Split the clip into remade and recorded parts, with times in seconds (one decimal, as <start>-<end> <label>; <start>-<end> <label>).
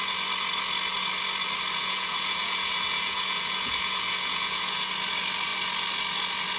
0.0-1.8 recorded; 1.8-4.9 remade; 4.9-6.6 recorded